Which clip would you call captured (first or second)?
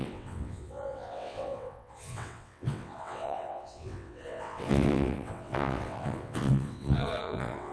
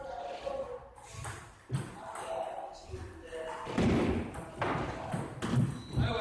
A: second